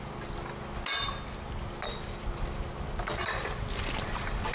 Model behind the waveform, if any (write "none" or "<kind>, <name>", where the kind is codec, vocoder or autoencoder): none